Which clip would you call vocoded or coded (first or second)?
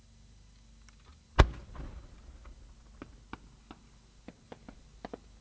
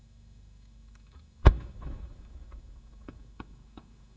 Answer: second